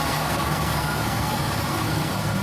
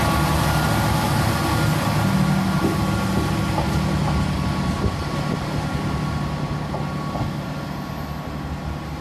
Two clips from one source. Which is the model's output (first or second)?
first